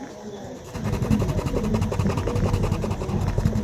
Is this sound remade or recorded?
recorded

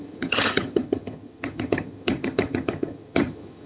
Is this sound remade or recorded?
remade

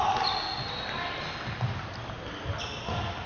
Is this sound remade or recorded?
recorded